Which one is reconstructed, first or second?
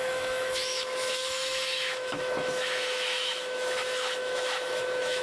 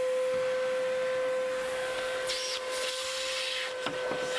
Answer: first